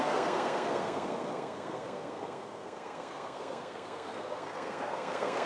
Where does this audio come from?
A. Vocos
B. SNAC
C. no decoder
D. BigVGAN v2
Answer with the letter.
B